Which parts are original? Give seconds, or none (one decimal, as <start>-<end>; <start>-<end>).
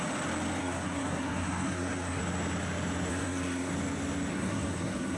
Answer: 0.0-0.6; 2.2-3.1; 3.7-4.3